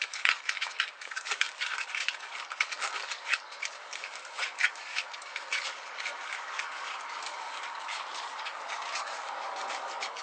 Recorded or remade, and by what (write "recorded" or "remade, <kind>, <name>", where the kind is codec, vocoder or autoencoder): remade, codec, DAC